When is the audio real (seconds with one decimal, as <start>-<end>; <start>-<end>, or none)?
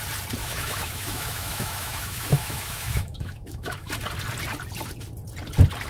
0.0-0.4; 3.9-5.9